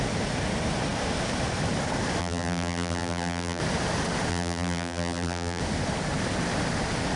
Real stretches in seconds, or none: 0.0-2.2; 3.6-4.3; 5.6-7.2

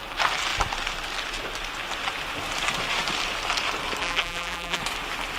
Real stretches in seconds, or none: 0.0-4.0; 4.8-5.4

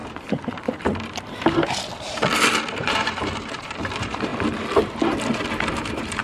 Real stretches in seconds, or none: 0.0-1.2; 1.9-2.7; 4.3-5.8

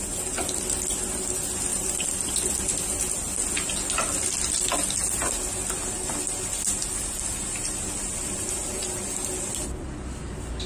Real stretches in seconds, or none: 0.0-1.7; 2.6-10.7

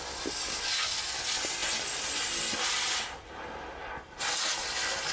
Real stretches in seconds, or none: 0.0-5.1